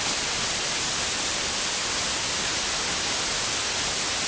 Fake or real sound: real